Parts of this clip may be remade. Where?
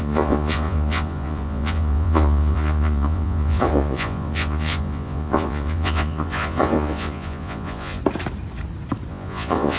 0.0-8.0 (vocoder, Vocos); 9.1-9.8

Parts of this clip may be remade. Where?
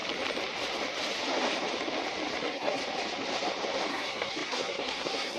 2.4-2.8 (codec, SNAC); 3.9-5.4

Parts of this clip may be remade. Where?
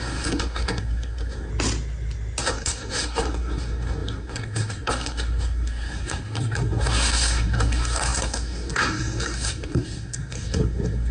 0.0-1.5 (codec, SNAC); 2.4-11.1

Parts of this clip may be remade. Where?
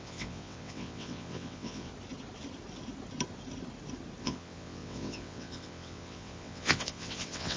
0.0-1.9 (vocoder, WaveNeXt); 4.2-7.6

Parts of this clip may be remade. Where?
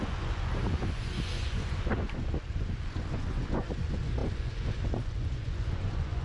0.0-6.2 (vocoder, Vocos)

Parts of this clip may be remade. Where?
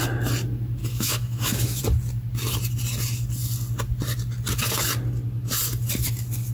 0.8-1.8 (autoencoder, DAC-VAE)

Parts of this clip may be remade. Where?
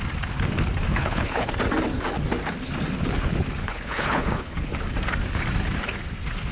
0.9-1.5 (codec, HILCodec); 3.6-4.7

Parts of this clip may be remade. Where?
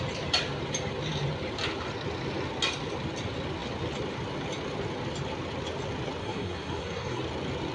6.2-7.2 (codec, SNAC)